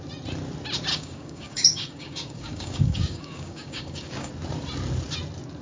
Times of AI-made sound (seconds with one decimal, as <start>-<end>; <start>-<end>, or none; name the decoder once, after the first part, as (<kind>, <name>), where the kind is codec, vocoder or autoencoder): 0.9-4.3 (codec, DAC)